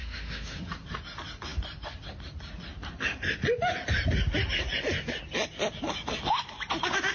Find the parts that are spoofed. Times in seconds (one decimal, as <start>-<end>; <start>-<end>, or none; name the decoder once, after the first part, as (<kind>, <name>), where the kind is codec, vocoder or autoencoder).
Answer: 0.0-0.6 (autoencoder, DAC-VAE)